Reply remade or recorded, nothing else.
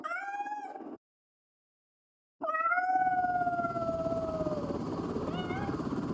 recorded